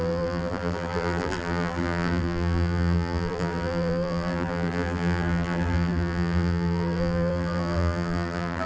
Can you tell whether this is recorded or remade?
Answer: remade